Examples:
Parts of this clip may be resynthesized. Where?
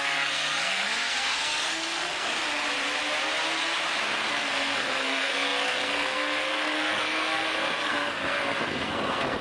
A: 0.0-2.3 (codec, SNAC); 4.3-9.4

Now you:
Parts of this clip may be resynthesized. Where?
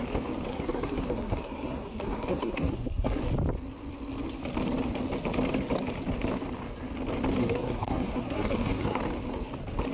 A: 0.5-3.2 (codec, SNAC); 7.4-9.0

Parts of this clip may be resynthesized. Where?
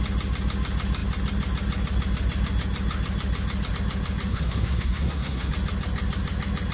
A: 4.3-5.5 (codec, SNAC)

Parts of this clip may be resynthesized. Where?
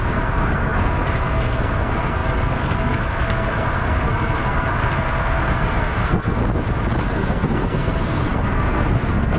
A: 0.0-6.4 (codec, SNAC); 7.1-9.4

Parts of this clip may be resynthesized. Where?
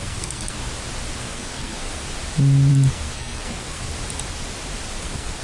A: 0.0-0.6 (codec, SNAC); 1.2-2.0; 2.7-3.9; 5.0-5.4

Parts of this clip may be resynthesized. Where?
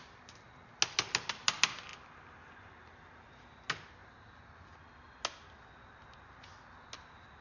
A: none